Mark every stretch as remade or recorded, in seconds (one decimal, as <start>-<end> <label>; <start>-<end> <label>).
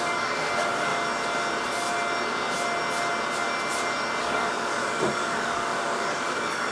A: 0.0-0.9 remade; 0.9-4.2 recorded; 4.2-6.7 remade